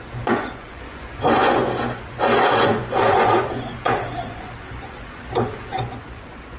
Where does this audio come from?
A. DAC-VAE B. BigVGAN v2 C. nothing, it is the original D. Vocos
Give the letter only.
D